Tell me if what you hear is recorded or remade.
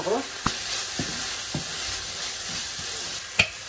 recorded